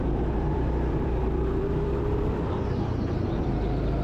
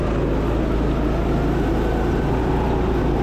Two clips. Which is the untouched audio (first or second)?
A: second